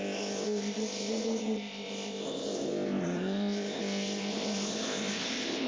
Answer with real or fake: fake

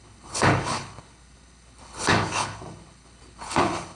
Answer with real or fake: fake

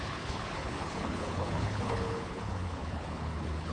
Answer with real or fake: fake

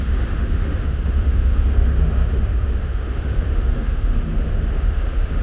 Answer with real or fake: fake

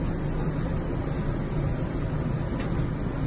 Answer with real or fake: real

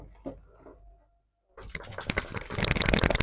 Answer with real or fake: real